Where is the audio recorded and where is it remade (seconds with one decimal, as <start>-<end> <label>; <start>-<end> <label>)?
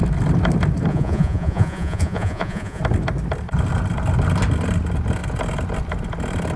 0.0-0.9 recorded; 0.9-2.8 remade; 2.8-6.6 recorded